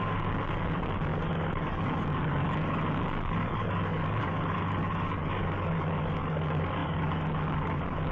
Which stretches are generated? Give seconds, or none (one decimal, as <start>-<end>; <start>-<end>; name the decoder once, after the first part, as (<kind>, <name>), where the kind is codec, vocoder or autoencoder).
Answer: 0.0-8.1 (codec, DAC)

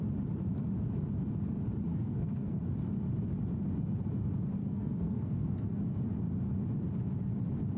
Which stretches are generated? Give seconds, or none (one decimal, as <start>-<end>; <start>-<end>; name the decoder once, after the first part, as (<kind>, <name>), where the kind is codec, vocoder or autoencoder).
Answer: 1.9-2.6 (codec, SNAC); 4.6-5.8